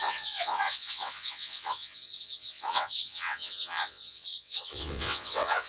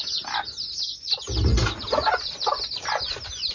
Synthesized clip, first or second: first